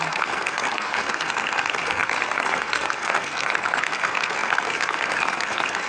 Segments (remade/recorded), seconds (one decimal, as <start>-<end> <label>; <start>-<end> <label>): 0.0-5.9 remade